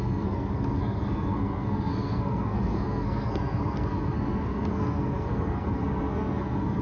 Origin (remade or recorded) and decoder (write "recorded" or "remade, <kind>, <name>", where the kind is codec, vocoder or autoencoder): remade, codec, SNAC